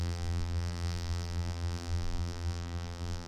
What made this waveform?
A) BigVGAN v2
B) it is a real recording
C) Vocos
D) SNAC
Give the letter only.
A